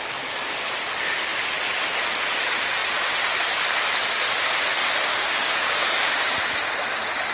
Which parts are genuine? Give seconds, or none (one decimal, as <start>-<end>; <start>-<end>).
0.0-5.1; 6.3-7.3